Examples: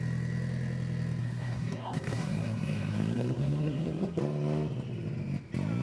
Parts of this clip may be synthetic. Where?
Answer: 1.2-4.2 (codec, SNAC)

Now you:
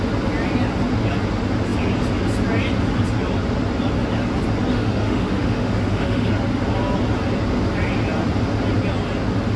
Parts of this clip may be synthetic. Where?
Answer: 4.7-6.3 (autoencoder, DAC-VAE)

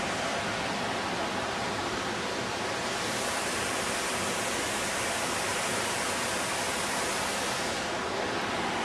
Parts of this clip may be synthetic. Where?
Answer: none

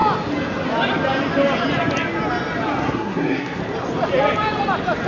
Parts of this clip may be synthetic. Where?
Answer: 2.8-3.6 (codec, SNAC)

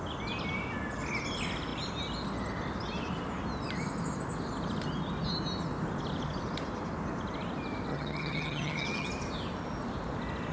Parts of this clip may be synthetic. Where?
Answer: 7.9-9.1 (vocoder, HiFi-GAN)